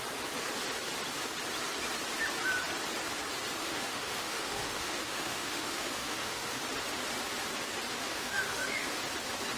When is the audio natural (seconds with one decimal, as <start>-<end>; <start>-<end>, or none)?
0.0-3.6; 6.6-7.9; 9.0-9.6